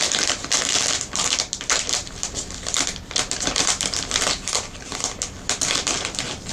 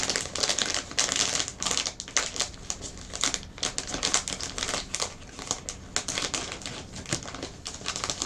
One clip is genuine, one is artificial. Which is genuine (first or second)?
second